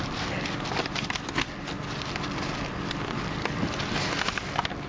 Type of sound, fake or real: real